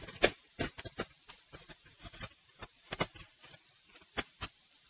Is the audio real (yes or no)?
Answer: yes